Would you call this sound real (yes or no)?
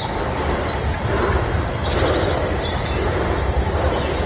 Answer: yes